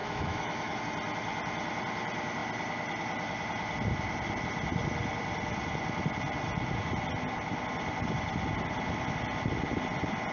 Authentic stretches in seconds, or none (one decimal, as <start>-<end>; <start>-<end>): 0.8-10.3